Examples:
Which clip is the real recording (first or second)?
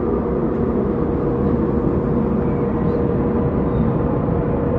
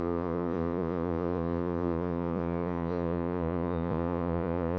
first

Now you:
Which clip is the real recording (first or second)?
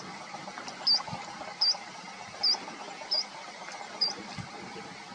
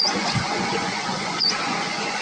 first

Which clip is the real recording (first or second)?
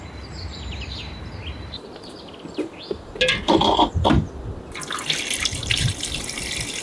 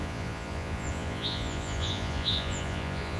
first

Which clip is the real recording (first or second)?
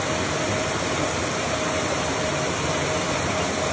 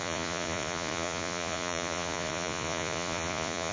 first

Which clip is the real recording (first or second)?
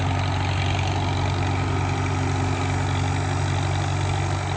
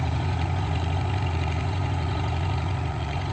first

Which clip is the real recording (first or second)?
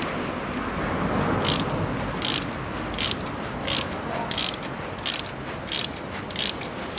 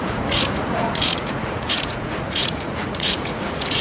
first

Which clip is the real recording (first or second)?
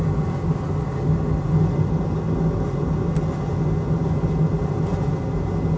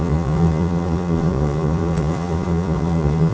first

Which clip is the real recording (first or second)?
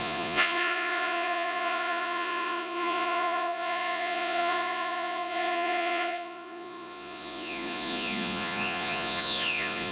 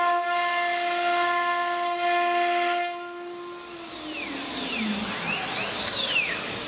second